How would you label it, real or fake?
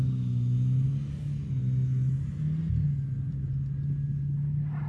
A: real